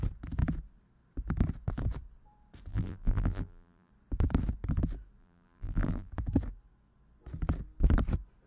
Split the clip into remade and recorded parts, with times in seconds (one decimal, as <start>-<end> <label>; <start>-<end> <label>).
0.0-2.7 recorded; 2.7-3.9 remade; 3.9-5.2 recorded; 5.2-6.1 remade; 6.1-8.5 recorded